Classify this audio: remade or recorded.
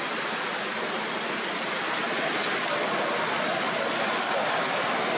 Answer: recorded